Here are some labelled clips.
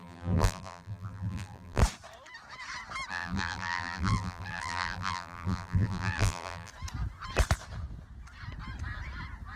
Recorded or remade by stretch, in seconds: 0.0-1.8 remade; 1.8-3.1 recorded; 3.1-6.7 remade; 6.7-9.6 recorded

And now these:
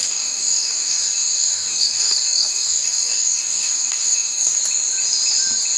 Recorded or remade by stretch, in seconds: 0.0-4.6 remade; 4.6-5.8 recorded

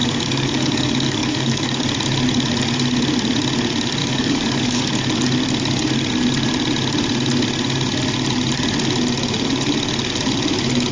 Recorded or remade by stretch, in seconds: 0.0-1.8 remade; 1.8-4.0 recorded; 4.0-4.8 remade; 4.8-10.9 recorded

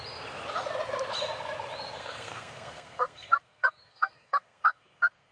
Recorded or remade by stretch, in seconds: 0.0-2.0 recorded; 2.0-5.3 remade

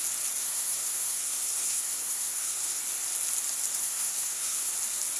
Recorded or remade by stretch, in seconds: 0.0-0.4 recorded; 0.4-2.8 remade; 2.8-3.8 recorded; 3.8-4.7 remade; 4.7-5.2 recorded